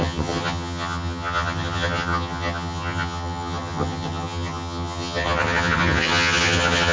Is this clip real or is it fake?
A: fake